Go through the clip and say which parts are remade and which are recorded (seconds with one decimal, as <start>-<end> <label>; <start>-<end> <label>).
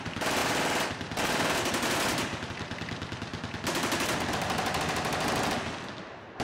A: 0.0-6.4 recorded